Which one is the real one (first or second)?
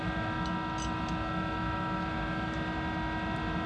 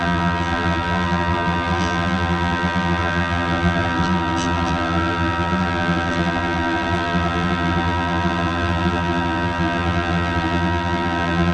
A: first